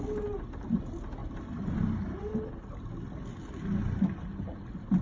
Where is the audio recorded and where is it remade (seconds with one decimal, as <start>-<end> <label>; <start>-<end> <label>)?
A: 0.0-1.2 recorded; 1.2-2.3 remade; 2.3-5.0 recorded